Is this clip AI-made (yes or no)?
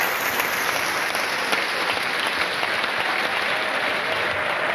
no